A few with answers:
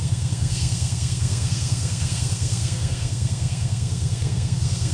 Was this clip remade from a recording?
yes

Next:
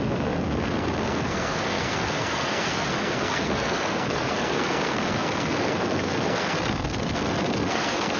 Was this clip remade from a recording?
yes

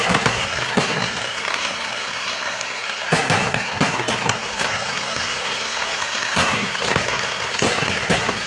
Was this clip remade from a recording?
yes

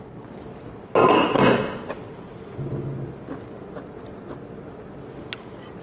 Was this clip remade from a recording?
no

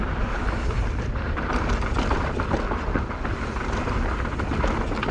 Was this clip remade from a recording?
no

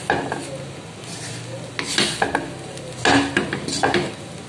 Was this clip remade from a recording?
no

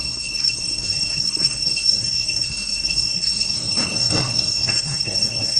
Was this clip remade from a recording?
yes